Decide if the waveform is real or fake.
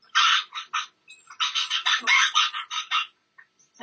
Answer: real